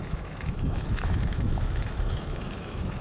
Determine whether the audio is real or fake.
fake